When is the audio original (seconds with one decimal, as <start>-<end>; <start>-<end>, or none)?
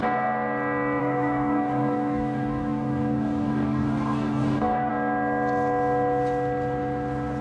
0.0-1.0; 4.9-7.4